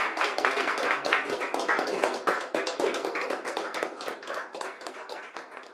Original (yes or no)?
no